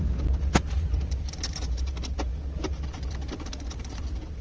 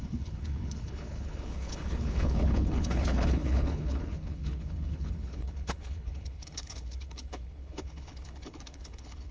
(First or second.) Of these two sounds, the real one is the first